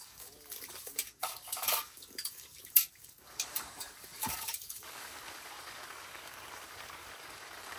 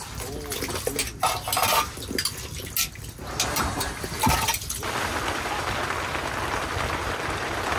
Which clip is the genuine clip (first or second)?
second